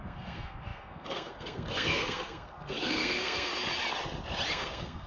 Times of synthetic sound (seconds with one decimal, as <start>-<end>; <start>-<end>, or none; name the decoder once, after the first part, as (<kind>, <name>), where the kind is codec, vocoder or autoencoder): 0.0-3.5 (codec, SNAC); 4.5-5.1